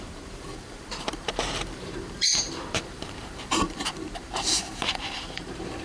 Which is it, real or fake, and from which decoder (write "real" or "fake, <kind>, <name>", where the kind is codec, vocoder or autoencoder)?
fake, vocoder, BigVGAN v2